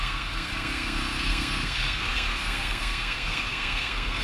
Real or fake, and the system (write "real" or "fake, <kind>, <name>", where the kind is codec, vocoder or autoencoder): fake, codec, SNAC